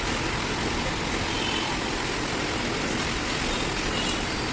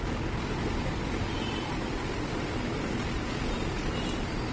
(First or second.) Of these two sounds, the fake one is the first